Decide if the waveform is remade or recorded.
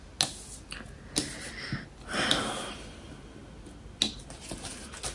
recorded